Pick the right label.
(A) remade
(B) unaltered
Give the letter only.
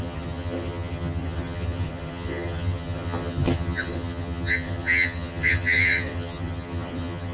A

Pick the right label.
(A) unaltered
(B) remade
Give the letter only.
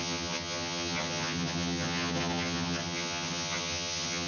B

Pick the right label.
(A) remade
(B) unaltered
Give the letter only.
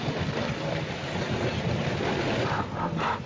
B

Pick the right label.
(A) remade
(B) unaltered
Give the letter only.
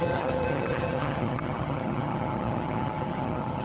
A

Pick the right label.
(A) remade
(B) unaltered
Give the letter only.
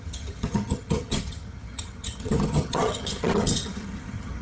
A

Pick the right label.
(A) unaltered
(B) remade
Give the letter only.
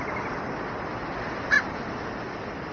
A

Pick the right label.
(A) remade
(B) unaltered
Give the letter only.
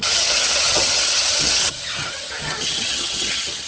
A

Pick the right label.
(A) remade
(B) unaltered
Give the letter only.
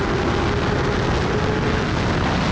B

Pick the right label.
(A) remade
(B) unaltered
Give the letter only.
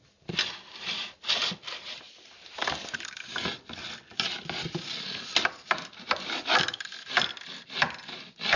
B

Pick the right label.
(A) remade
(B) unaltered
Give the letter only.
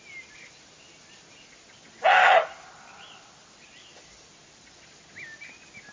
B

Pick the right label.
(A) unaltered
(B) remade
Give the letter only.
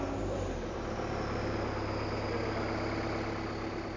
A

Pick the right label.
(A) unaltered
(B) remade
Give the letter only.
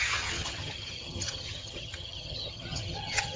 B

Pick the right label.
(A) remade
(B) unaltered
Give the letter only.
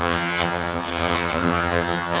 A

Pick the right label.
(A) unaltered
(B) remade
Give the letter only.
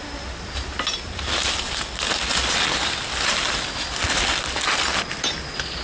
A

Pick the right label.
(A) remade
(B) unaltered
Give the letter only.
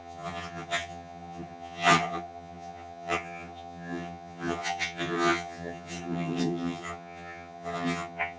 A